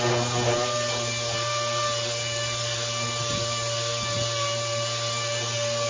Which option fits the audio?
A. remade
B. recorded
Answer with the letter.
B